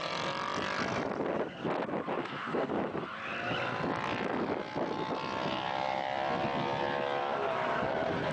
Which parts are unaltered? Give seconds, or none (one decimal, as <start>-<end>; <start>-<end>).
0.0-2.2; 2.7-8.3